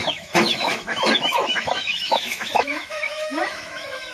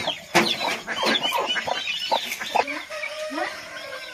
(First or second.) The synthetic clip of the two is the first